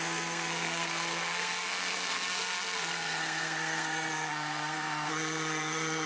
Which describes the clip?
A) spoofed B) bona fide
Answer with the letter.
A